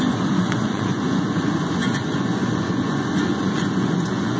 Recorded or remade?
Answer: remade